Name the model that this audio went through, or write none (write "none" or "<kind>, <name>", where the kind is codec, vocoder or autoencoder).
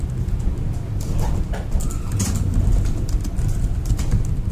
none